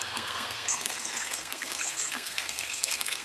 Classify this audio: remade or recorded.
remade